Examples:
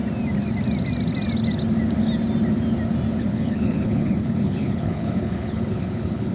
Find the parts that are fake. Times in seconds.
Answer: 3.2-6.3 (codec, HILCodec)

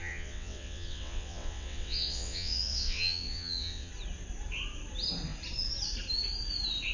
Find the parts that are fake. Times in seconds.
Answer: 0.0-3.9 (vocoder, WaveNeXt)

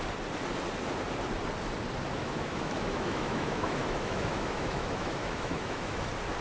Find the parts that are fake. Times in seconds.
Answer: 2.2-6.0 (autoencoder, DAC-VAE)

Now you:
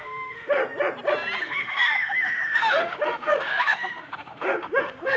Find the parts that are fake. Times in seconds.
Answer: 0.0-0.6 (autoencoder, DAC-VAE); 1.4-5.2

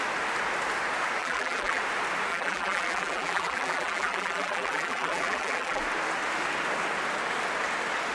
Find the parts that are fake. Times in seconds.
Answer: 1.2-1.8 (vocoder, BigVGAN v2); 2.3-5.8

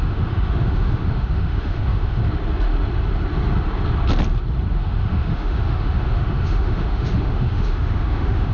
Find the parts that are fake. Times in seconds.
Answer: 0.0-2.2 (autoencoder, DAC-VAE); 4.7-8.5

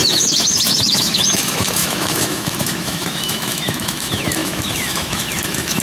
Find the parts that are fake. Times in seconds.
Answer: 0.0-5.8 (autoencoder, DAC-VAE)

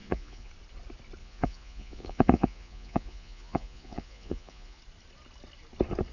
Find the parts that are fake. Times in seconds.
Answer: 0.0-0.5 (vocoder, Vocos); 1.2-4.8